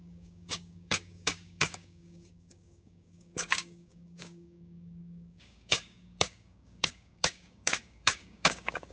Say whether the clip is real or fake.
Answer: fake